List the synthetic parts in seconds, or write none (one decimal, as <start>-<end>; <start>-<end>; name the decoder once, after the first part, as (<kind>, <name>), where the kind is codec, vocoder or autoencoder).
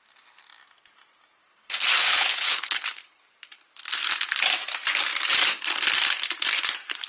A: 1.9-3.2 (codec, HILCodec)